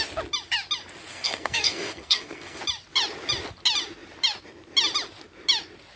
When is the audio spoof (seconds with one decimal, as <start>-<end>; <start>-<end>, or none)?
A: 1.1-2.6